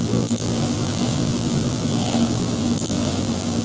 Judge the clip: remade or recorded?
remade